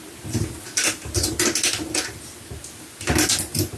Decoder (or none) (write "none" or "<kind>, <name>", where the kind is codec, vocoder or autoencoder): none